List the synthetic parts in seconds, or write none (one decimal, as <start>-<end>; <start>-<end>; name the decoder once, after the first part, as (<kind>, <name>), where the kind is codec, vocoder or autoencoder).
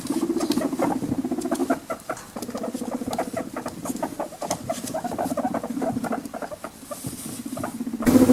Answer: 1.6-4.0 (vocoder, BigVGAN v2); 4.4-7.1